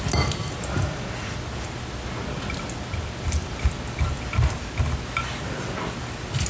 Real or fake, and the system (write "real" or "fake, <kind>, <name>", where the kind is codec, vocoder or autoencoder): real